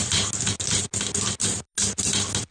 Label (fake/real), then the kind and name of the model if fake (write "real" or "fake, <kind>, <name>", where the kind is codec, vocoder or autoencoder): real